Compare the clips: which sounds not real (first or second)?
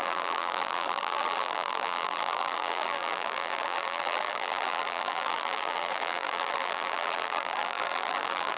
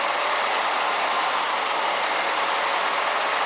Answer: first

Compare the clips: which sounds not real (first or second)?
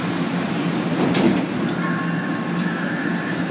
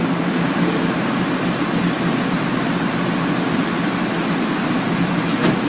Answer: second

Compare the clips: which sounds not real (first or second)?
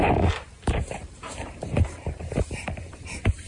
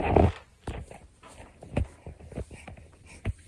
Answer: first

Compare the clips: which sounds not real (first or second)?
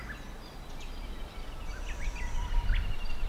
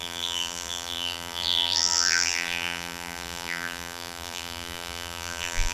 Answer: second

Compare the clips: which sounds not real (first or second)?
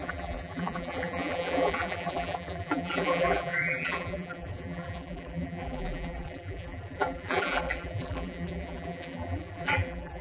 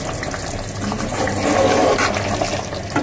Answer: first